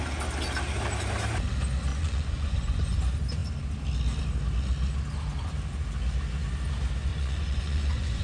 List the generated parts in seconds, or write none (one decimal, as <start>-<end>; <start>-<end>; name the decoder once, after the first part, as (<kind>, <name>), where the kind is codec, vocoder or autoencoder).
1.9-3.0 (vocoder, Vocos); 7.1-8.2